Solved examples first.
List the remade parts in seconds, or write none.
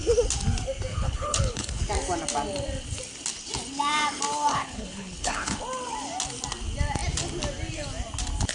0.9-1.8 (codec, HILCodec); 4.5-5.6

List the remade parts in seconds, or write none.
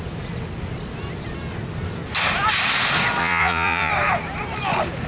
3.2-3.9 (vocoder, Vocos)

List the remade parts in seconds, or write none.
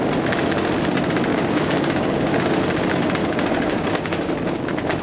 1.3-2.6 (codec, DAC); 3.2-4.3